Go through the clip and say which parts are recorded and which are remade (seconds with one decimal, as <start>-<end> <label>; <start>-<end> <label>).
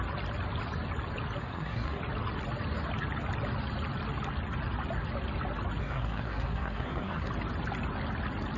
0.0-1.4 recorded; 1.4-2.0 remade; 2.0-5.8 recorded; 5.8-7.3 remade; 7.3-8.6 recorded